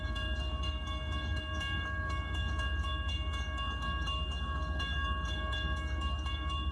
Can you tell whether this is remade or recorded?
remade